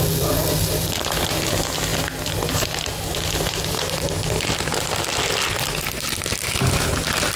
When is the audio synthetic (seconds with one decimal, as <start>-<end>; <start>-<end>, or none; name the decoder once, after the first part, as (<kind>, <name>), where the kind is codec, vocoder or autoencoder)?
none